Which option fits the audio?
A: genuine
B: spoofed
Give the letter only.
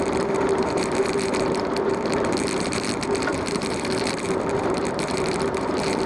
B